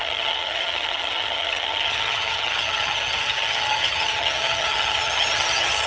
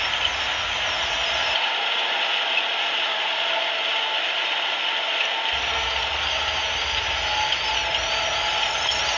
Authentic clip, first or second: second